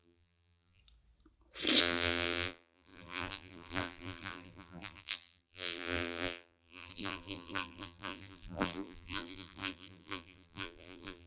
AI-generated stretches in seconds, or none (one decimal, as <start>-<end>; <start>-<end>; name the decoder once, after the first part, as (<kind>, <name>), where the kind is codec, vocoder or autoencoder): 0.0-0.8 (vocoder, BigVGAN v2); 1.8-11.3